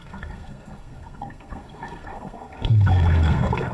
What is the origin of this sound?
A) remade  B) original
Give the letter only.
A